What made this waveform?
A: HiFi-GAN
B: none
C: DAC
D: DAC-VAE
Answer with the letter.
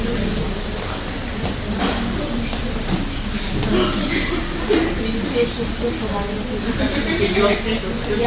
B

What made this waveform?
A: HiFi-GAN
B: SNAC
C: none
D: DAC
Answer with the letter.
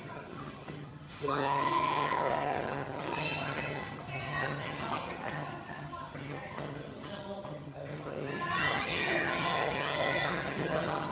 A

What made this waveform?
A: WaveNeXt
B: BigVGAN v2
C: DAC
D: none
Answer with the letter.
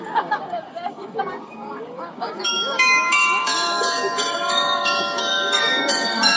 C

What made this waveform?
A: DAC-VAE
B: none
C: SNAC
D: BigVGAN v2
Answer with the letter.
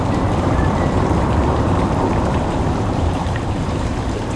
D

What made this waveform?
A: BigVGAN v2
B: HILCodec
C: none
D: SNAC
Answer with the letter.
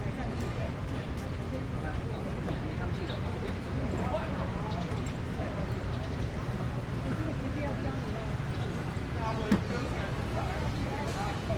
C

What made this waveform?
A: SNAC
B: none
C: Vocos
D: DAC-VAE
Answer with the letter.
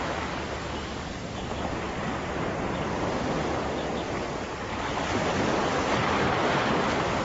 B